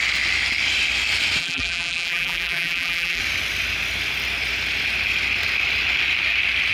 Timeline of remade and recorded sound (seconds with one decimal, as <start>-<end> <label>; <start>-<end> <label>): 0.0-1.4 recorded; 1.4-3.2 remade; 3.2-6.7 recorded